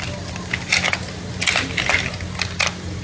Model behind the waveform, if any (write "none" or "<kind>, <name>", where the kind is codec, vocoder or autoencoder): none